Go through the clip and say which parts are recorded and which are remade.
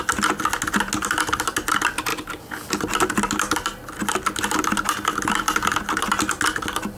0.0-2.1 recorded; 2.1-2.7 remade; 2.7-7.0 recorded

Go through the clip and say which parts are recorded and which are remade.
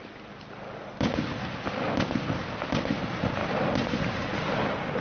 0.0-3.0 recorded; 3.0-5.0 remade